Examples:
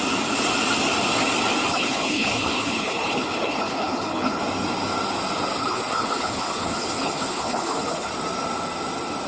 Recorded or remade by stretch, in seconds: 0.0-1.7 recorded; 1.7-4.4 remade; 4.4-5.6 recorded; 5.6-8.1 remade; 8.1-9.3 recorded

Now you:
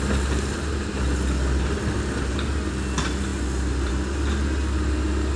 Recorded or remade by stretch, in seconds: 0.0-5.4 recorded

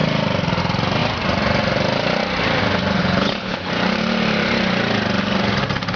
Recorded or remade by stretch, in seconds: 0.0-3.0 recorded; 3.0-3.7 remade; 3.7-6.0 recorded

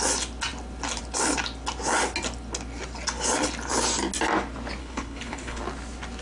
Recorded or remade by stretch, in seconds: 0.0-4.8 recorded; 4.8-5.6 remade; 5.6-6.2 recorded

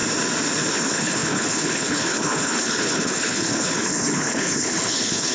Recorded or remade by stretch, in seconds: 0.0-0.7 recorded; 0.7-5.3 remade

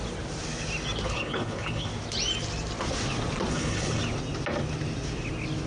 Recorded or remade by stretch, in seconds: 0.0-1.1 recorded; 1.1-1.9 remade; 1.9-3.5 recorded; 3.5-4.0 remade; 4.0-5.7 recorded

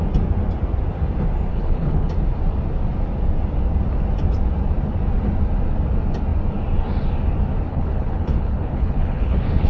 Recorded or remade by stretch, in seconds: 0.0-1.5 recorded; 1.5-2.1 remade; 2.1-7.7 recorded; 7.7-9.7 remade

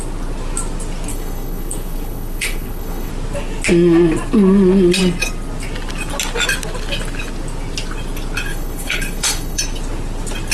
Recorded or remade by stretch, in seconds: 0.0-1.1 recorded; 1.1-3.1 remade; 3.1-8.5 recorded; 8.5-9.6 remade; 9.6-10.5 recorded